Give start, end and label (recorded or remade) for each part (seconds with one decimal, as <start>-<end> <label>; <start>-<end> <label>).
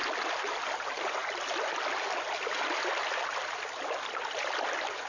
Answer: 0.0-5.1 recorded